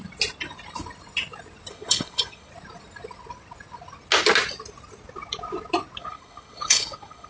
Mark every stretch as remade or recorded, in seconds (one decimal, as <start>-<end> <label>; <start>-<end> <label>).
0.0-1.7 recorded; 1.7-2.5 remade; 2.5-6.0 recorded; 6.0-7.3 remade